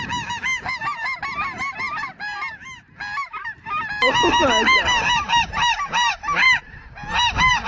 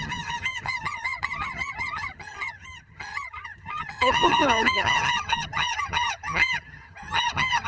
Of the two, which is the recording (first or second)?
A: first